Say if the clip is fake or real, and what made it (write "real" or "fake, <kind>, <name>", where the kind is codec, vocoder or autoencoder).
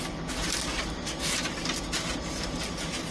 real